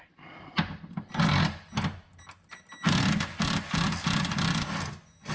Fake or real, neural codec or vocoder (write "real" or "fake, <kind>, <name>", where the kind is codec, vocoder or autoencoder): real